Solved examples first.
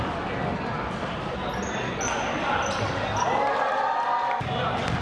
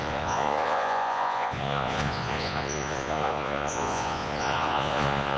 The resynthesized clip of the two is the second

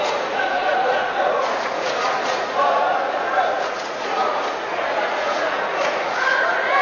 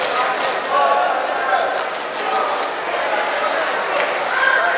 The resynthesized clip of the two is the first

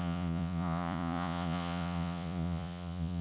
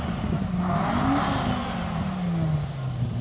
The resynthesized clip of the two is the first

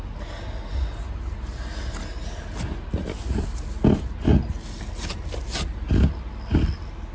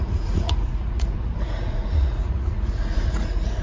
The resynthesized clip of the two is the second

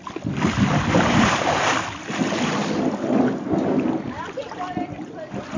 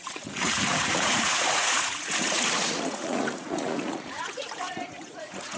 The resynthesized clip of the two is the second